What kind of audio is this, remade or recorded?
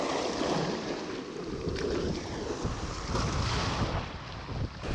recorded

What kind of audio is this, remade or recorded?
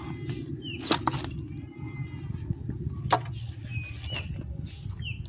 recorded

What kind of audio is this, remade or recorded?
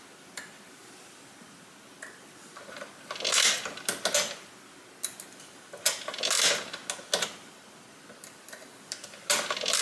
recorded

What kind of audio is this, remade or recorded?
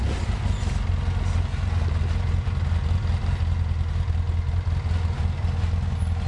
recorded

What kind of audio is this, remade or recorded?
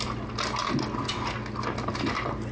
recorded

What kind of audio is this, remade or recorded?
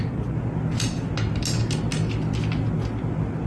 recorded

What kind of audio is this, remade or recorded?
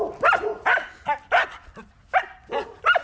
recorded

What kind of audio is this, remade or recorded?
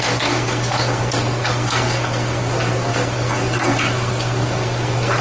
remade